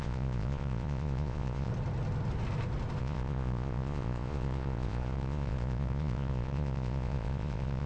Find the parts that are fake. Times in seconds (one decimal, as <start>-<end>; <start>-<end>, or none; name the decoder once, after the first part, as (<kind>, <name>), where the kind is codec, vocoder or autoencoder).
0.0-1.7 (vocoder, Vocos); 3.0-7.9